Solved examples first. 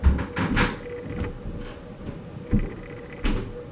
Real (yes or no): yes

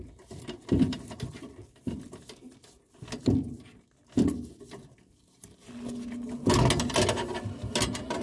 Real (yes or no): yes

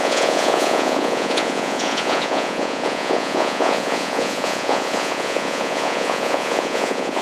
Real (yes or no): no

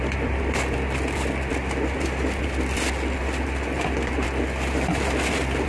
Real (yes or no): yes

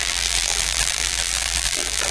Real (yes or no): no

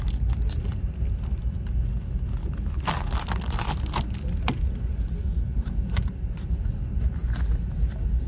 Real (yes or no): yes